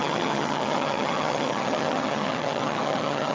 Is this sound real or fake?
fake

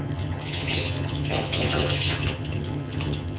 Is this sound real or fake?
fake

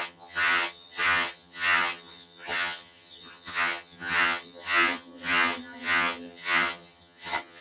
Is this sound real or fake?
fake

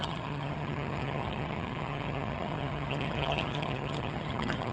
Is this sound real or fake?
fake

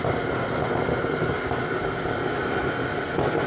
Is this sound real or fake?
real